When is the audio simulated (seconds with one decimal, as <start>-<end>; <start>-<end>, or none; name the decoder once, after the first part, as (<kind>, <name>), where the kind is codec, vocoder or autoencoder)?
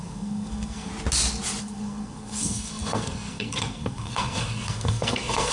0.0-0.9 (codec, SNAC); 1.6-5.5